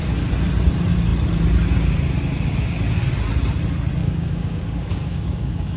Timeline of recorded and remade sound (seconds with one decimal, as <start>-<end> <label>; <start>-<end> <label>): 0.0-4.0 recorded; 4.0-5.8 remade